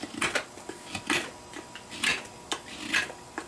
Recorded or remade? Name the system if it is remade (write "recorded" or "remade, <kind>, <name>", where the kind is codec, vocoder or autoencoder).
recorded